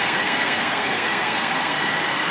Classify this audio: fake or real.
fake